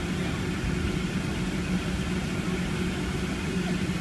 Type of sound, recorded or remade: recorded